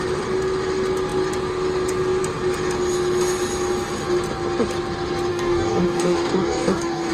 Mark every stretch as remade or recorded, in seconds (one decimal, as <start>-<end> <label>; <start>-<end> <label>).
0.0-5.3 recorded; 5.3-7.1 remade